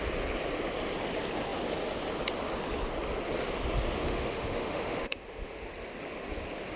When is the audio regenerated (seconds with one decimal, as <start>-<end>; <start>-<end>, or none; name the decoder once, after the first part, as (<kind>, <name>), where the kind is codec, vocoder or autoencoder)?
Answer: 4.0-5.7 (autoencoder, DAC-VAE)